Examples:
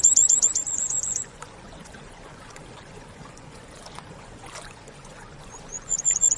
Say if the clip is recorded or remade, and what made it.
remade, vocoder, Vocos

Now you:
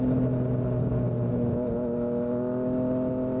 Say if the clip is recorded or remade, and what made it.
recorded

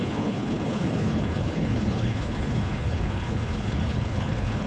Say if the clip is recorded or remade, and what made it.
remade, codec, HILCodec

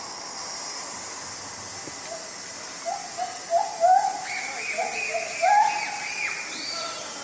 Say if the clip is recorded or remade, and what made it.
recorded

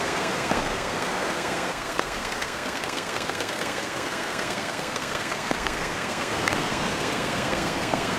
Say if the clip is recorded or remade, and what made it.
remade, codec, SNAC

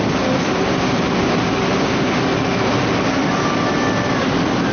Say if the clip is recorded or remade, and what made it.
recorded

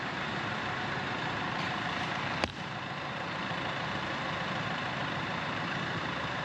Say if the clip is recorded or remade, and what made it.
remade, vocoder, BigVGAN v2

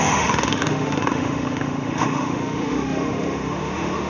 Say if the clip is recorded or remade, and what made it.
remade, autoencoder, DAC-VAE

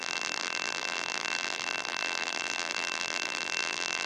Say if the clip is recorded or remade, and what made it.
remade, vocoder, BigVGAN v2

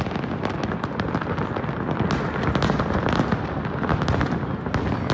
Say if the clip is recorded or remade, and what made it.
recorded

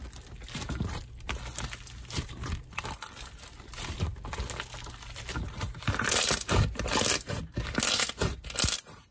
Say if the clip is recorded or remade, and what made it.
recorded